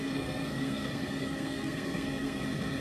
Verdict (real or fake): fake